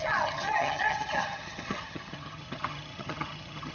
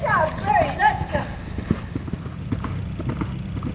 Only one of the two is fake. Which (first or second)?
first